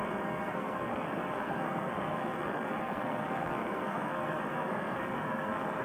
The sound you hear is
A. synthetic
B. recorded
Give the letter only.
A